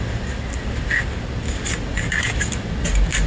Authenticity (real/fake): real